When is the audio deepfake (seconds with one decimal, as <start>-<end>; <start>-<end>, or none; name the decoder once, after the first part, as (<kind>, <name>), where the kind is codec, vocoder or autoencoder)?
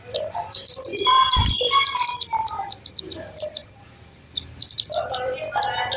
none